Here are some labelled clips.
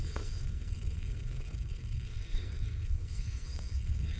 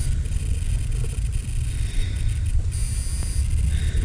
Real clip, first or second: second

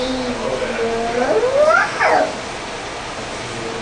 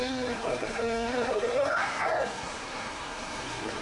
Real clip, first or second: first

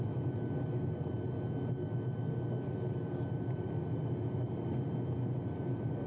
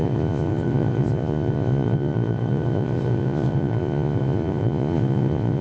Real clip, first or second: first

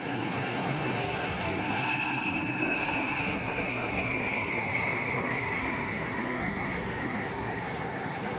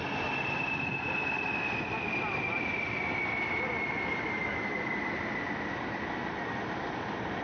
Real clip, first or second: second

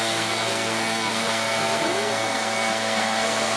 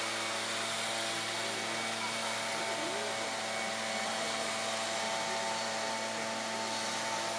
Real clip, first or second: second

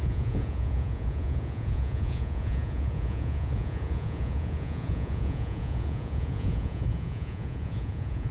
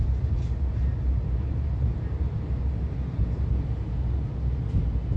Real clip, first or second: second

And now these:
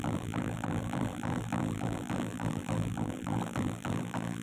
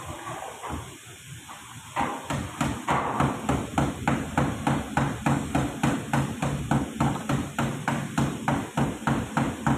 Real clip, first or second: second